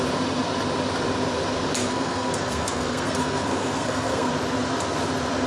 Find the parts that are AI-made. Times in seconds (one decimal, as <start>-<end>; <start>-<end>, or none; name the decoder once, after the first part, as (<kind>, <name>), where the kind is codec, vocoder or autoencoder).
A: 1.8-4.3 (codec, SNAC)